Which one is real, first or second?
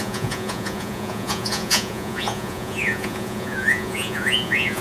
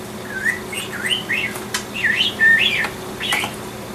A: second